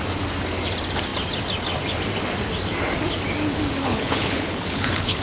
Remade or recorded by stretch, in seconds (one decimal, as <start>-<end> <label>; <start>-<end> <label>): 0.0-3.8 recorded; 3.8-5.2 remade